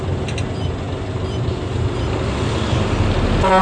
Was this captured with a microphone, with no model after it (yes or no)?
yes